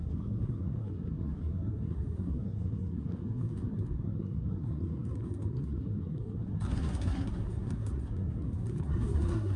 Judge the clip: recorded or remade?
remade